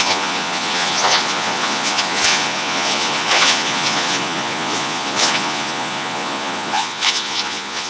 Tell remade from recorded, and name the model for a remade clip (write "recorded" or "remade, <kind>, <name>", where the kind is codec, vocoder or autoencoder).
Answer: remade, vocoder, Vocos